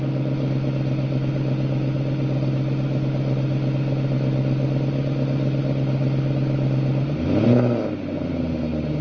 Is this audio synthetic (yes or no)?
no